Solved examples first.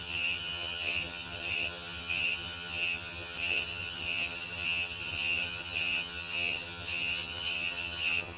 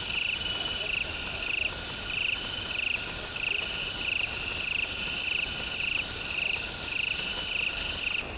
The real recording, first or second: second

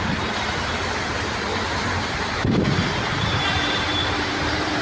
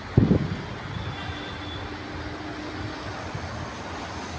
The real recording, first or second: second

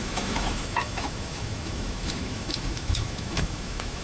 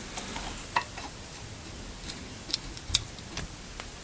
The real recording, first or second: second